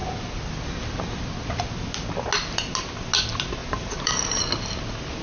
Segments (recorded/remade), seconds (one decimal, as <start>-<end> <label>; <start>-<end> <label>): 0.0-3.6 recorded; 3.6-4.4 remade; 4.4-5.2 recorded